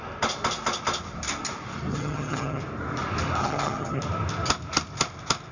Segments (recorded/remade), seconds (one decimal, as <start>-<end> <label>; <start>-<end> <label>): 0.0-1.9 recorded; 1.9-2.6 remade; 2.6-3.4 recorded; 3.4-4.0 remade; 4.0-5.5 recorded